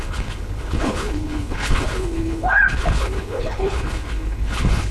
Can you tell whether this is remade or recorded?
remade